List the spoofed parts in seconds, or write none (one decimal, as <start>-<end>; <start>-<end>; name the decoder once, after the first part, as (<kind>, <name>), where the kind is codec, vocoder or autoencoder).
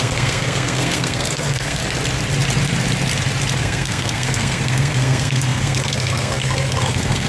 0.0-1.8 (codec, SNAC); 3.6-7.3